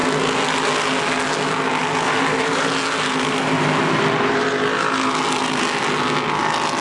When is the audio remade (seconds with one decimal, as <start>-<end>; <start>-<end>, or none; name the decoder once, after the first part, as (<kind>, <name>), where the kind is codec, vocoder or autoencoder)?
none